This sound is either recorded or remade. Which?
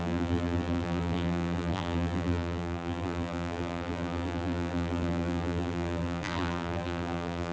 remade